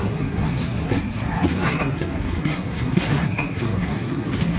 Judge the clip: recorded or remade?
remade